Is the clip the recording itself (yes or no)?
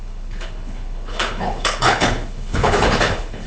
no